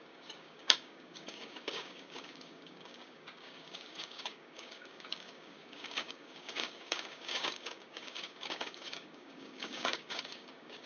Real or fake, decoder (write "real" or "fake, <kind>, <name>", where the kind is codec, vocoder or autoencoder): fake, codec, DAC